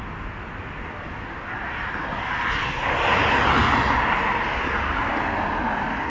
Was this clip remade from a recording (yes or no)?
no